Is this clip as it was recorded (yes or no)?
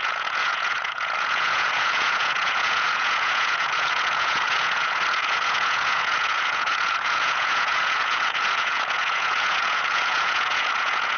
no